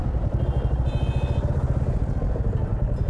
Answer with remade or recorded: recorded